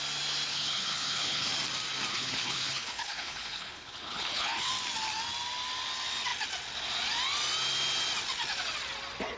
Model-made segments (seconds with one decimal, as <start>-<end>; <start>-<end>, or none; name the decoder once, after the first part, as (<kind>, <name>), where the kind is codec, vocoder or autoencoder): 0.5-1.5 (codec, HILCodec); 2.1-4.7